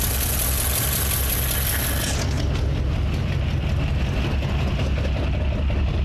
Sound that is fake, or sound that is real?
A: real